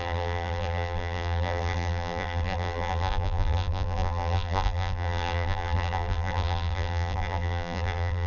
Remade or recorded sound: remade